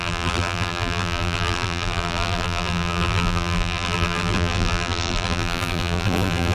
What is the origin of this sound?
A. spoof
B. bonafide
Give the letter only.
A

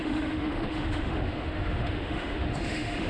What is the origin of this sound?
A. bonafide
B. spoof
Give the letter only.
B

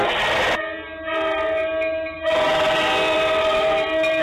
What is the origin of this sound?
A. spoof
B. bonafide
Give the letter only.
B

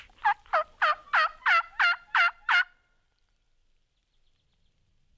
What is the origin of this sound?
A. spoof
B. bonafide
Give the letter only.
B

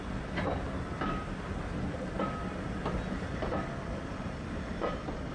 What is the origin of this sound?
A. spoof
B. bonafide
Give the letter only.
B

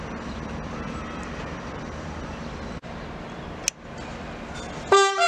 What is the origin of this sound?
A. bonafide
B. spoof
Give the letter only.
A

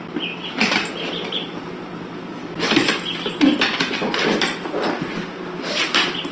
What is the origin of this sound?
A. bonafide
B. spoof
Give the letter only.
A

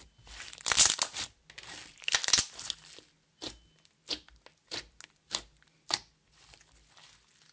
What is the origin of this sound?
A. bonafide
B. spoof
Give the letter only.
A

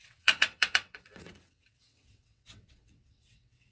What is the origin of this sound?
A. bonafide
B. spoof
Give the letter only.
B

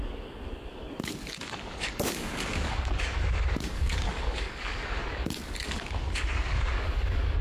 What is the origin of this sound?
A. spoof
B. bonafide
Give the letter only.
A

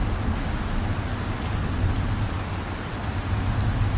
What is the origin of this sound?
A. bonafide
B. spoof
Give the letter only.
A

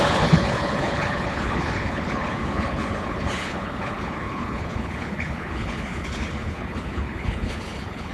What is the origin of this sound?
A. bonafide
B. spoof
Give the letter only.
B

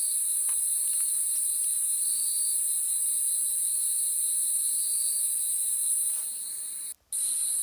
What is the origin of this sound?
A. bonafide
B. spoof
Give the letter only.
A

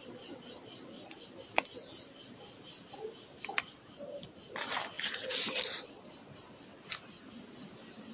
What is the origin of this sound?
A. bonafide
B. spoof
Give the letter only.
A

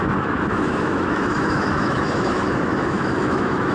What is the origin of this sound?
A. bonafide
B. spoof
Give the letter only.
B